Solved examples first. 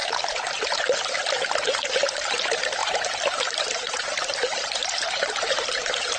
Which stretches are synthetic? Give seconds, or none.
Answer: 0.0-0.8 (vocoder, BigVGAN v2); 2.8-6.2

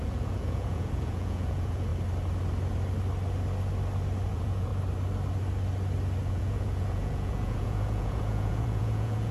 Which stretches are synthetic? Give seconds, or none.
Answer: 0.0-1.9 (vocoder, Vocos); 4.3-4.7; 6.3-9.3

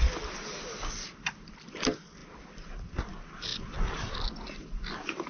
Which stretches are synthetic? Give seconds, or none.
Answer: none

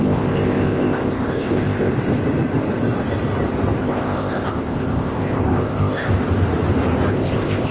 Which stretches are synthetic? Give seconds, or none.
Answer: 0.0-1.9 (codec, ZipCodec); 3.8-6.1; 7.1-7.7

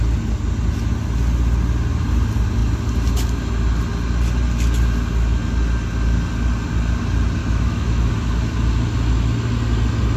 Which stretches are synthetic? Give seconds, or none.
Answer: 7.4-8.1 (autoencoder, DAC-VAE)

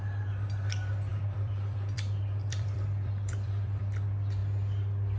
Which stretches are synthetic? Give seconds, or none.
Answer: 1.1-3.8 (vocoder, BigVGAN v2)